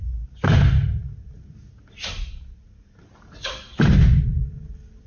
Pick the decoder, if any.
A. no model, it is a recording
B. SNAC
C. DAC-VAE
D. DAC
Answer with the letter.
A